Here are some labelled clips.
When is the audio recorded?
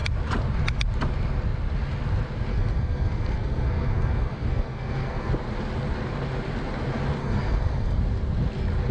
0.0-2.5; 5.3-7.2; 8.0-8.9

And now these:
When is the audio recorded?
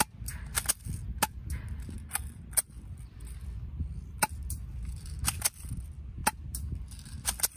0.0-7.6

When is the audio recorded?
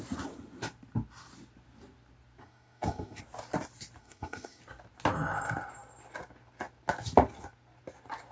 0.0-2.4; 3.2-4.0; 4.6-8.3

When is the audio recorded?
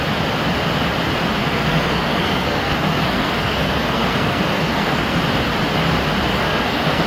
0.0-1.4; 5.2-6.3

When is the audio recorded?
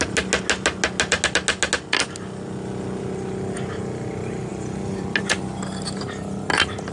0.0-6.9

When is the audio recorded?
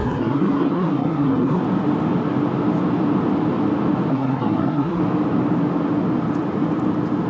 1.6-4.1; 5.0-7.3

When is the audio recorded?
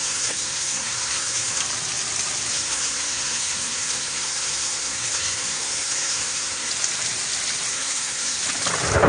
1.6-2.5; 6.7-7.7; 8.4-9.1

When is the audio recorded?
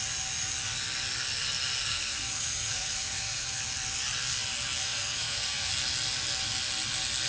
0.0-1.8; 3.6-4.8; 5.7-7.3